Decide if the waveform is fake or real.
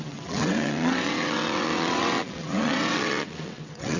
fake